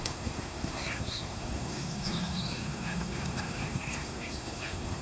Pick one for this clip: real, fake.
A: fake